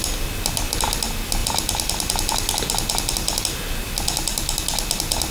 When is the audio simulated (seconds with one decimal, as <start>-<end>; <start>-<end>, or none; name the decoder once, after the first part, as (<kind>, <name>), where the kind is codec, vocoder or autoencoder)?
none